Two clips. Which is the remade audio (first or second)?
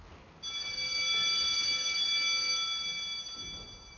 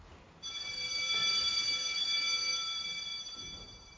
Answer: second